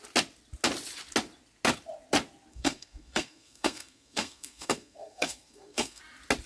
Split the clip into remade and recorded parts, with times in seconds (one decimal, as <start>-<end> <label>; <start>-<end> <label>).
0.0-2.5 recorded; 2.5-6.0 remade; 6.0-6.5 recorded